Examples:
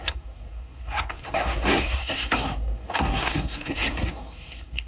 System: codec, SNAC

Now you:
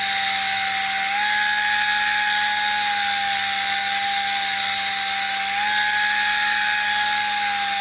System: none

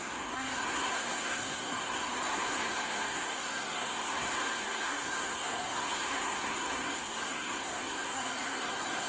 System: codec, SNAC